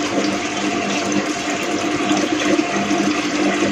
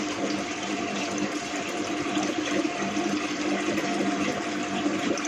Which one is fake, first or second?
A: second